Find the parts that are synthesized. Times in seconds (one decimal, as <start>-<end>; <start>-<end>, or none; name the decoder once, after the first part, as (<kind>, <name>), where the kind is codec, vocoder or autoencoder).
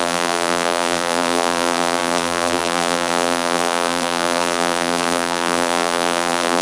0.0-6.6 (vocoder, BigVGAN v2)